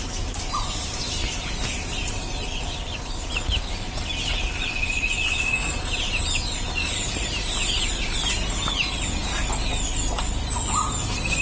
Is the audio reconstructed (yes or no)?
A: no